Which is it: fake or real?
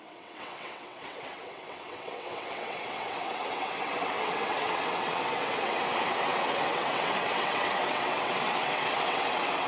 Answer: fake